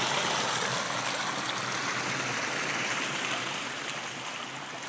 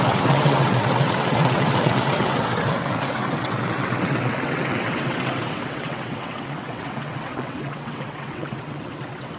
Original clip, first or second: first